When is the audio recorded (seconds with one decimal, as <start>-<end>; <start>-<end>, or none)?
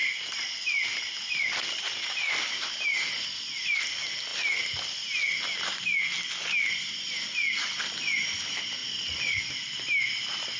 0.0-10.6